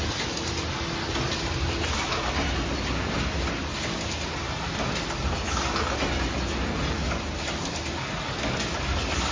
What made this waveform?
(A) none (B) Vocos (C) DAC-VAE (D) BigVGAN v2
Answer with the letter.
A